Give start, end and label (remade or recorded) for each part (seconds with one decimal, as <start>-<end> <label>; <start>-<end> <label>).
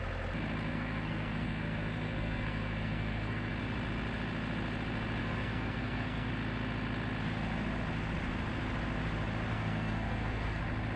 0.0-0.7 recorded; 0.7-3.5 remade; 3.5-5.2 recorded; 5.2-6.3 remade; 6.3-9.5 recorded; 9.5-10.6 remade; 10.6-11.0 recorded